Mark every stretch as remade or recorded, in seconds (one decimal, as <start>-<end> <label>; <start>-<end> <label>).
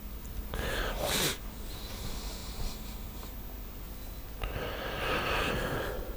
0.0-6.2 recorded